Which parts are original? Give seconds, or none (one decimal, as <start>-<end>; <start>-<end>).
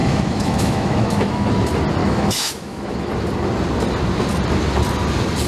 1.5-2.0; 3.1-5.5